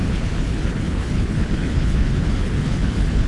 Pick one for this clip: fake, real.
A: fake